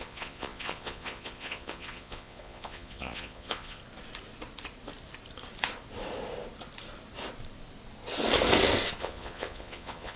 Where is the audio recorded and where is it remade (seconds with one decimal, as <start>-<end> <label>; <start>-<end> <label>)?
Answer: 0.0-3.8 remade; 3.8-9.0 recorded; 9.0-10.2 remade